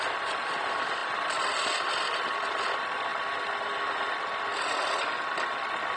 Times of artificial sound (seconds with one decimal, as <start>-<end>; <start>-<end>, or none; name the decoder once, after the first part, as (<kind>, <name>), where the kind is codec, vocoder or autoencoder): none